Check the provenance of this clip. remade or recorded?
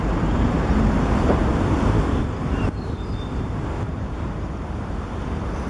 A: remade